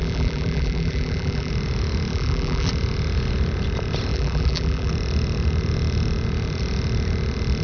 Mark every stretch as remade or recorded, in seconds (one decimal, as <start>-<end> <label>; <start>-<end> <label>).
0.0-1.5 remade; 1.5-2.1 recorded; 2.1-2.7 remade; 2.7-4.1 recorded; 4.1-4.9 remade; 4.9-7.6 recorded